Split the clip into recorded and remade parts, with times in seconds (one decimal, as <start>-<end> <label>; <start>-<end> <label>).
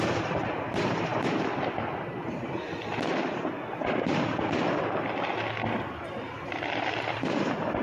0.0-1.1 remade; 1.1-5.8 recorded; 5.8-7.8 remade